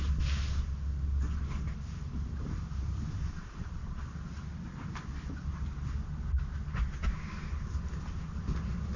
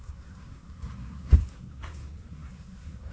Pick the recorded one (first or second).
first